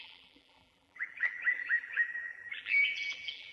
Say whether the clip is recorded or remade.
remade